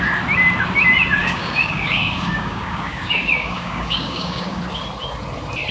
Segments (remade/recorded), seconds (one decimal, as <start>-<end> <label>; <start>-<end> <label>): 0.0-1.2 recorded; 1.2-4.6 remade; 4.6-5.7 recorded